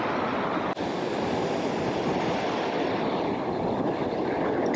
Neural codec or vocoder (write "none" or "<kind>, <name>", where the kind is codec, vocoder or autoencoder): none